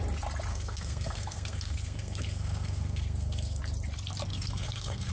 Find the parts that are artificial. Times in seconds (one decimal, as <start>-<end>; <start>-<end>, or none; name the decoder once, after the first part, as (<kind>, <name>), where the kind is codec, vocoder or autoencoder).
0.5-3.6 (codec, SNAC); 4.3-5.1